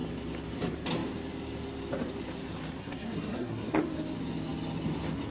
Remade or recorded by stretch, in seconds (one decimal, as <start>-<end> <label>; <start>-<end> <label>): 0.0-2.8 recorded; 2.8-3.8 remade; 3.8-5.3 recorded